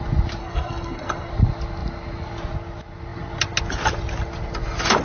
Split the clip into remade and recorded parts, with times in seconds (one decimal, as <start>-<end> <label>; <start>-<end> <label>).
0.0-0.4 recorded; 0.4-1.3 remade; 1.3-5.0 recorded